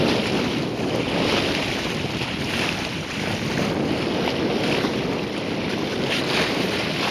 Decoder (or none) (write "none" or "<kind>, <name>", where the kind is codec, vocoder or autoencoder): none